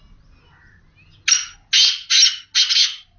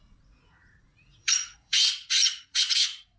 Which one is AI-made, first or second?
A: second